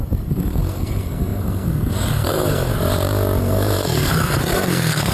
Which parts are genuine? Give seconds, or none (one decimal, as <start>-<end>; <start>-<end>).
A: 2.7-3.4